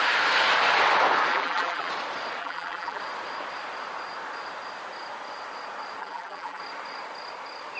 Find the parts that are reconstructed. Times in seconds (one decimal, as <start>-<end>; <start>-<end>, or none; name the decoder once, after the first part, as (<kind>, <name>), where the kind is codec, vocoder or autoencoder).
1.3-1.9 (vocoder, BigVGAN v2); 2.4-3.0; 6.0-6.6

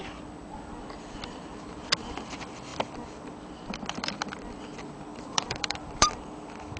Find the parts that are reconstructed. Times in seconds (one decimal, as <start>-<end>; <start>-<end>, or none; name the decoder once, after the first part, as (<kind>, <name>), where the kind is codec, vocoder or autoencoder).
2.7-4.2 (vocoder, BigVGAN v2); 5.1-6.1

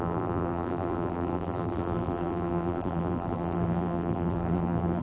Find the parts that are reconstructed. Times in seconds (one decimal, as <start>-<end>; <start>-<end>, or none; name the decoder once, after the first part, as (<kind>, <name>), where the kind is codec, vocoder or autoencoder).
0.0-5.0 (vocoder, BigVGAN v2)

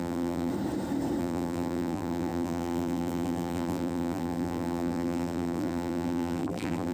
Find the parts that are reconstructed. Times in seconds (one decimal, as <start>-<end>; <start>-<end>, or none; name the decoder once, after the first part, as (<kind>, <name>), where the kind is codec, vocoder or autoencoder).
0.0-0.5 (vocoder, BigVGAN v2); 1.2-6.9